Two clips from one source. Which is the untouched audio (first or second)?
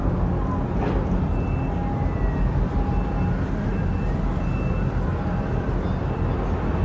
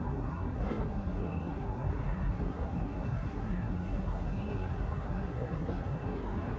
first